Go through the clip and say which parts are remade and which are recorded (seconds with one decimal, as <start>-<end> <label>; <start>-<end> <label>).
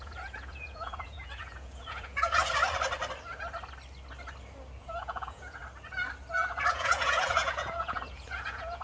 0.0-2.4 remade; 2.4-4.8 recorded; 4.8-5.6 remade; 5.6-6.7 recorded; 6.7-8.8 remade